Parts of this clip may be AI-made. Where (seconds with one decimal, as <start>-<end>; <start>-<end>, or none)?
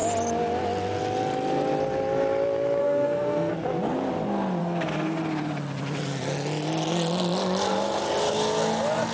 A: 2.8-3.5; 4.6-5.2